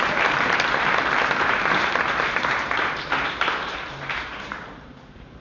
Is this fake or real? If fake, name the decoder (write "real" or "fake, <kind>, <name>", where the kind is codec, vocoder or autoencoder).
fake, vocoder, BigVGAN v2